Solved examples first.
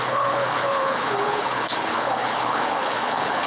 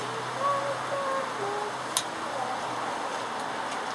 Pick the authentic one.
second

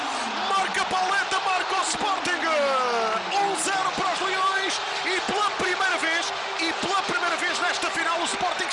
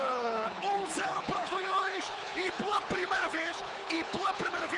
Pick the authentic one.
first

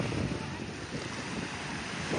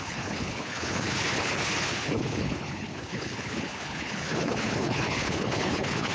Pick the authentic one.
first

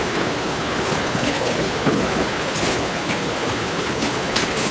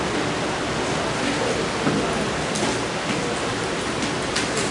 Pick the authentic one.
second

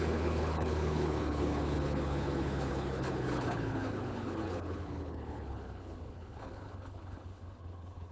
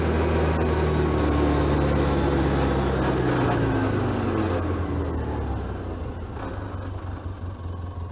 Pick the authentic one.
second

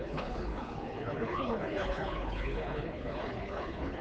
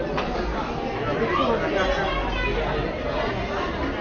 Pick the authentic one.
second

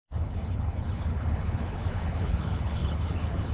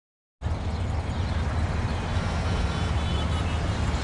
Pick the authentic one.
second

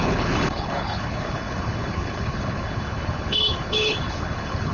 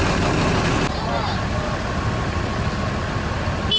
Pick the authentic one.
second